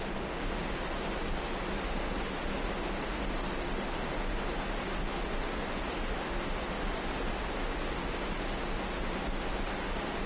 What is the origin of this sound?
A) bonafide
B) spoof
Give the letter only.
A